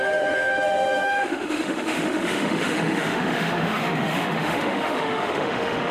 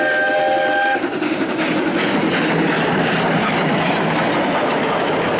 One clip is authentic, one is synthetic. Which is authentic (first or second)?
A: second